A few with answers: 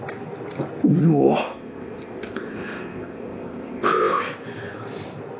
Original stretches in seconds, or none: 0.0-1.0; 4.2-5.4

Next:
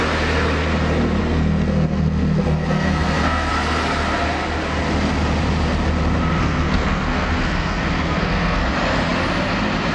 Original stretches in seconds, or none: 0.0-1.2; 3.5-6.4; 8.6-9.9

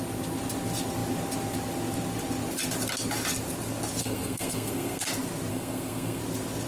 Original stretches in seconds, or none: 0.0-4.0; 5.0-5.5; 6.2-6.7

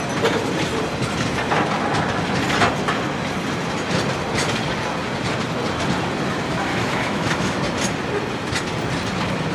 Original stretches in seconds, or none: 0.0-6.7; 7.6-9.5